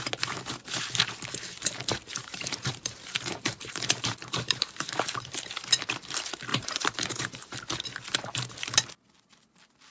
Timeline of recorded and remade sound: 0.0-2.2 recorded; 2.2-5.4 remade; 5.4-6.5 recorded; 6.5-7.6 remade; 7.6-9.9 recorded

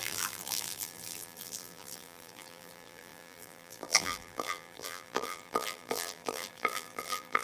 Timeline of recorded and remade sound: 0.0-7.4 remade

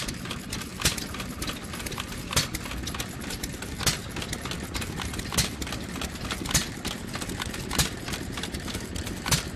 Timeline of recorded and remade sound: 0.0-9.6 recorded

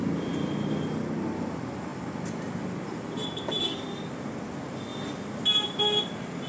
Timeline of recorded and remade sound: 0.0-1.9 recorded; 1.9-3.1 remade; 3.1-6.5 recorded

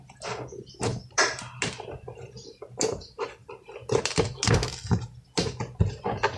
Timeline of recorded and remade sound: 0.0-0.9 recorded; 0.9-1.5 remade; 1.5-6.4 recorded

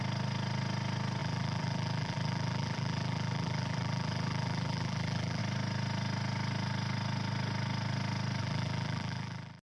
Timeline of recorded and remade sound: 0.0-1.2 recorded; 1.2-5.4 remade; 5.4-8.4 recorded; 8.4-9.6 remade